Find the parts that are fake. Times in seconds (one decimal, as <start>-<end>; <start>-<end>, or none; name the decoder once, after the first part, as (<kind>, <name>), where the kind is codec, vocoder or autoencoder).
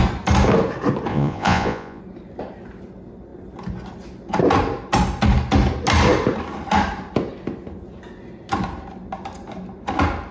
1.1-2.0 (vocoder, Vocos)